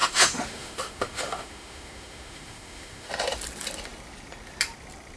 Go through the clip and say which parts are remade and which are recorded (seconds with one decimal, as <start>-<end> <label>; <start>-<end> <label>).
0.0-3.1 remade; 3.1-5.2 recorded